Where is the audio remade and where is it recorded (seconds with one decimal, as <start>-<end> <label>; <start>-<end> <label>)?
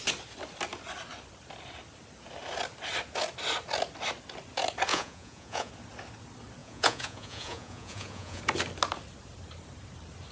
0.0-4.9 recorded; 4.9-5.7 remade; 5.7-6.6 recorded; 6.6-8.4 remade; 8.4-10.3 recorded